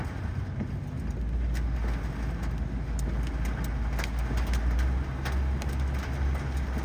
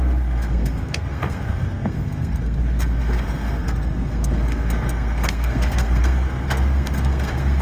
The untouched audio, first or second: first